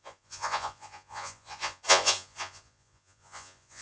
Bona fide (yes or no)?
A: no